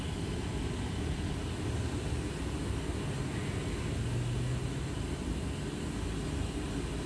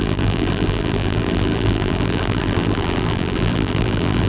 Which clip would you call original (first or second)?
first